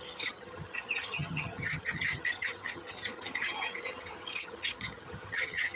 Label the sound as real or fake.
fake